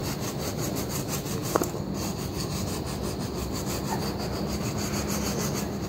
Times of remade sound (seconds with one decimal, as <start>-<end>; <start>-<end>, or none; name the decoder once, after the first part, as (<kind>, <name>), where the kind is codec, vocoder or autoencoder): none